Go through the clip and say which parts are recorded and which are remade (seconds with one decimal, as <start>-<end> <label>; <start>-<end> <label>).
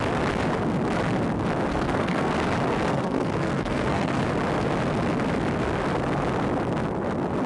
0.0-1.7 recorded; 1.7-2.3 remade; 2.3-2.9 recorded; 2.9-4.2 remade; 4.2-7.5 recorded